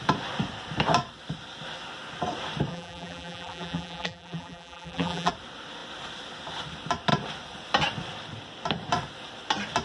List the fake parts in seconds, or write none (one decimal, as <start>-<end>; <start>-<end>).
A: 2.7-5.3